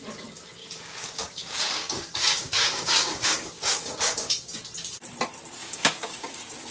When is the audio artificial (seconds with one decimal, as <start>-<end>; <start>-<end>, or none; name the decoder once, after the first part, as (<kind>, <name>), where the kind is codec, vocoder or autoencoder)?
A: 0.6-4.6 (codec, DAC); 5.6-6.7